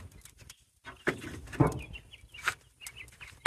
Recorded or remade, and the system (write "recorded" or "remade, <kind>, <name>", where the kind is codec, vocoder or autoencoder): recorded